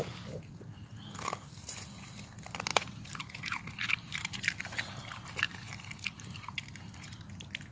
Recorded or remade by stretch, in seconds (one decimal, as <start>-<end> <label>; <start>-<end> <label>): 0.0-2.7 recorded; 2.7-7.3 remade; 7.3-7.7 recorded